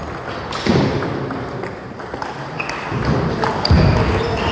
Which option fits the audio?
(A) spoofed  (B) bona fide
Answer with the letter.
B